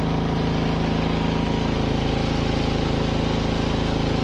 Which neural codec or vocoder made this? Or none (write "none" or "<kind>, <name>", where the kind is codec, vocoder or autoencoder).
none